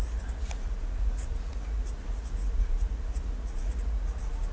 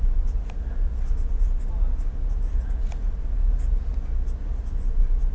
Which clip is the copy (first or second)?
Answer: first